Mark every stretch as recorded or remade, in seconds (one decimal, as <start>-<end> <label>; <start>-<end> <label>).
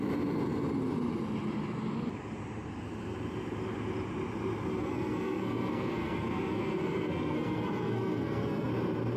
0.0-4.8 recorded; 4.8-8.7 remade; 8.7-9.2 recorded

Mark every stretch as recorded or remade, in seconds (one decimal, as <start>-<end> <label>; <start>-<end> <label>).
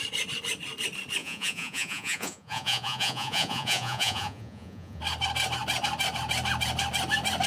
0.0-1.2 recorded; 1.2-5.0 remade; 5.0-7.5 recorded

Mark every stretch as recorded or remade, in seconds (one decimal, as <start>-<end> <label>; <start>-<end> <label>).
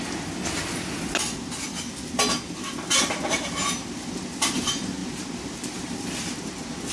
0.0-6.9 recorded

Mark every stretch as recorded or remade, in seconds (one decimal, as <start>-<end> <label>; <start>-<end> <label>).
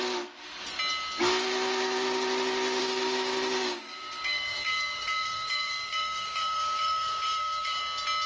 0.0-2.8 recorded; 2.8-7.8 remade; 7.8-8.3 recorded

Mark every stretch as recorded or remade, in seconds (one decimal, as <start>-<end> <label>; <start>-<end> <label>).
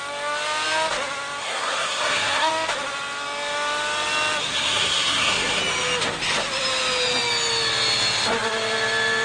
0.0-1.4 recorded; 1.4-2.5 remade; 2.5-4.5 recorded; 4.5-5.6 remade; 5.6-9.2 recorded